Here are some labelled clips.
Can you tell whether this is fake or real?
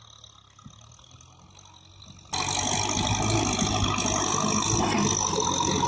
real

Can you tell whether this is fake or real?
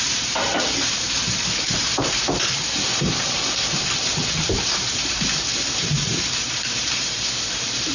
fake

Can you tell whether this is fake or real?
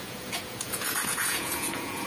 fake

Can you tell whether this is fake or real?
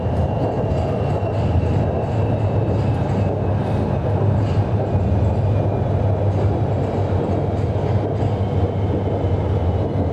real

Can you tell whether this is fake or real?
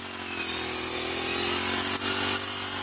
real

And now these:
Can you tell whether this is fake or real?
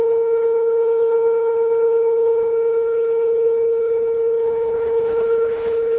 fake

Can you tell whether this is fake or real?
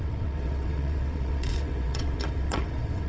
fake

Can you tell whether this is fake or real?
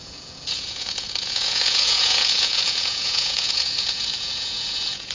fake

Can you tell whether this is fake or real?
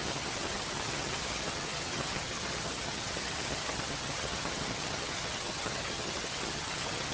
fake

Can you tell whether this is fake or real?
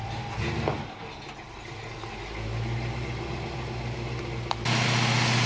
real